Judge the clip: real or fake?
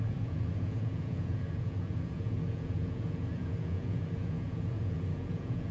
fake